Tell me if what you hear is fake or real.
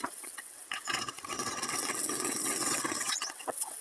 fake